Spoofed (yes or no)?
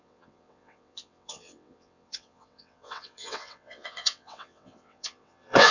yes